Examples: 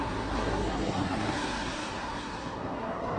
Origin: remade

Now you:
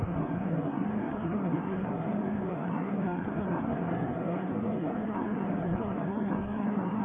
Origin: remade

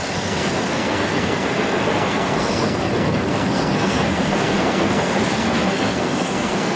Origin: remade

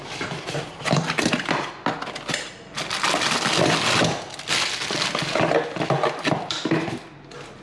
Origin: recorded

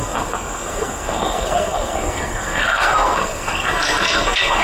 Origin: remade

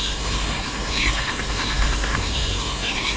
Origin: remade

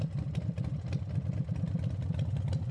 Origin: recorded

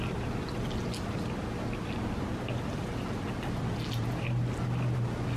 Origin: recorded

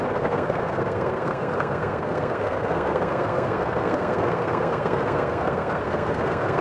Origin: remade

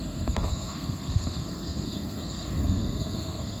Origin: remade